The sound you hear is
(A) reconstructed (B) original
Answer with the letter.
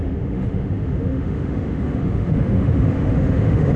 A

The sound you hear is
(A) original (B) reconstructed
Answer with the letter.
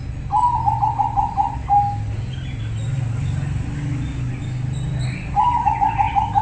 A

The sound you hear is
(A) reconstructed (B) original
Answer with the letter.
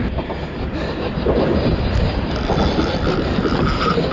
B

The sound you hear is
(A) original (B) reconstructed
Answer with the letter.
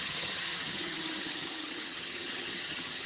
B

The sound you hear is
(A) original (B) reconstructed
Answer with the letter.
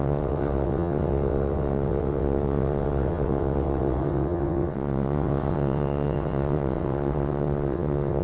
B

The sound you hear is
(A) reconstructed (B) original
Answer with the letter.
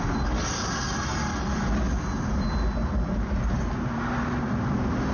B